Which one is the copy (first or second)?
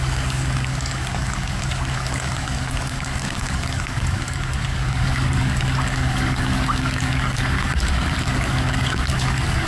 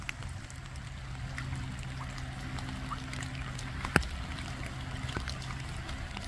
first